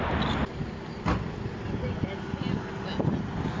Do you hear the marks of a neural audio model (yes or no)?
no